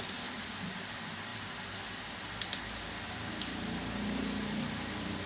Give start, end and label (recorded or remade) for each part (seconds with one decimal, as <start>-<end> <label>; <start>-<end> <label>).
0.0-5.3 recorded